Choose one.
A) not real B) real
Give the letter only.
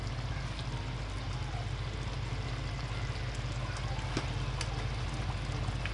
B